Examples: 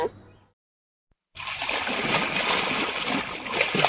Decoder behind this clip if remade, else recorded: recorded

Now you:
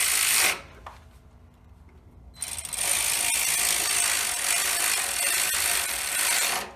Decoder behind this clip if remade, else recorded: recorded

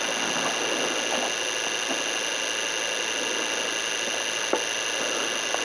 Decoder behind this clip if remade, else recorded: recorded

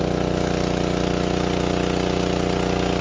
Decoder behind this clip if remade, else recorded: recorded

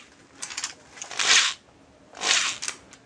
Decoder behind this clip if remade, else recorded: recorded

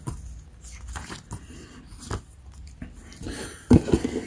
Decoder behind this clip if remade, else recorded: recorded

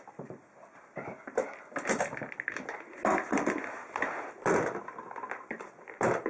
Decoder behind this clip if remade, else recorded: recorded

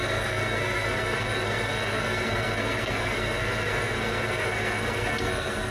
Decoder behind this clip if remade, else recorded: remade, codec, SNAC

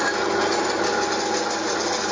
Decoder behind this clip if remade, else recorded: recorded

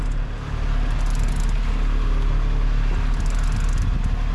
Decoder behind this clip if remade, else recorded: recorded